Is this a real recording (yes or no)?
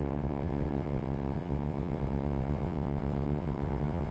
no